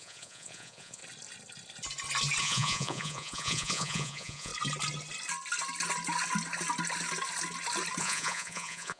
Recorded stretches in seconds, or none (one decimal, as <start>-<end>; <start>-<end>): 1.0-2.4; 4.5-8.0